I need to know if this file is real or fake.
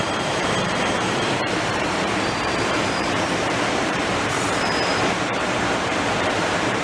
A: fake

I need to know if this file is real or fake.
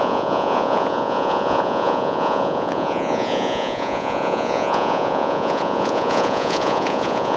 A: fake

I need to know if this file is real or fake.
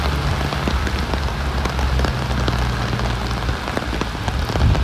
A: real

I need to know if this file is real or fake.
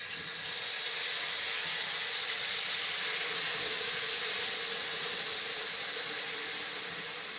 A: real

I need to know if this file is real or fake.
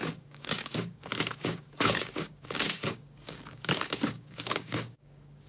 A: fake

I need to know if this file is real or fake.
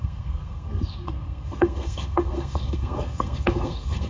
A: fake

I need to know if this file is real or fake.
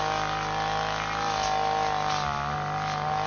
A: real